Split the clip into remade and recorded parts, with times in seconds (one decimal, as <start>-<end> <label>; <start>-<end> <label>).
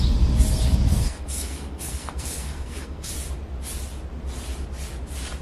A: 0.0-0.9 recorded; 0.9-3.1 remade; 3.1-5.4 recorded